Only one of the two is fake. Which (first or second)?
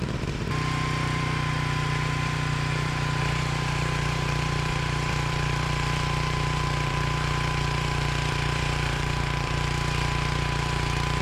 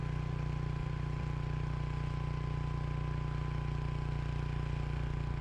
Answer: first